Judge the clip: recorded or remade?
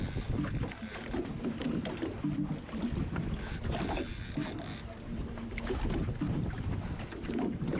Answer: recorded